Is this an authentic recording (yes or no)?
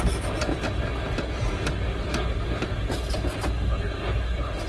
yes